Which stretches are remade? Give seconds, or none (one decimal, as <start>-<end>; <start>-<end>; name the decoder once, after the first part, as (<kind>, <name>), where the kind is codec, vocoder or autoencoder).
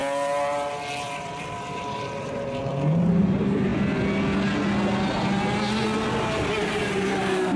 1.0-3.7 (vocoder, BigVGAN v2); 6.6-7.6